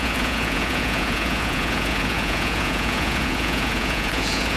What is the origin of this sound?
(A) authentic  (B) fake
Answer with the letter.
B